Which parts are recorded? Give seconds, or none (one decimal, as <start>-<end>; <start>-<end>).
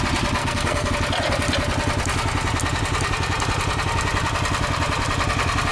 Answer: 0.0-0.4; 0.9-5.7